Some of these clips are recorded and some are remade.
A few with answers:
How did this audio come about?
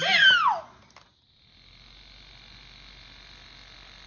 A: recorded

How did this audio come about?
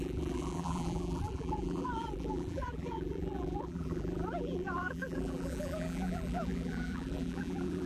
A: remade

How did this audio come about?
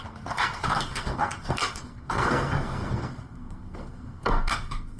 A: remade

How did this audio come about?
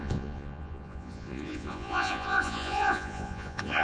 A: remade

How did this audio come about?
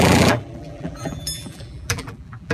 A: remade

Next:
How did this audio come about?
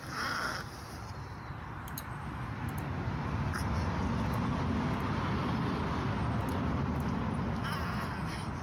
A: recorded